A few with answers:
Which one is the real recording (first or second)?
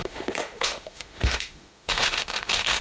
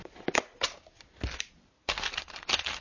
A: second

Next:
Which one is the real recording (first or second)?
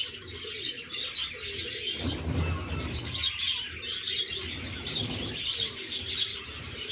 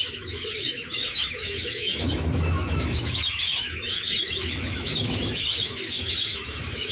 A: first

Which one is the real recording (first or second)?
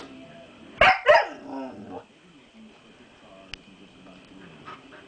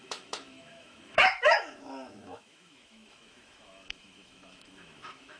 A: first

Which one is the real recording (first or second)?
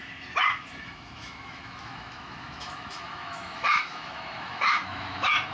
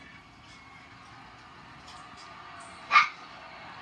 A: second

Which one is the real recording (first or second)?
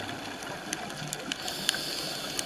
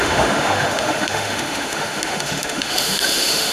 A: first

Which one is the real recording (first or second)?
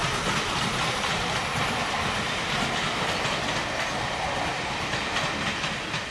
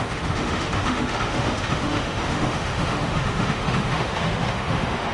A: first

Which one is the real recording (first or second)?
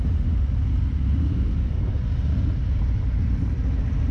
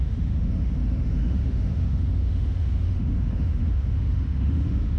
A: first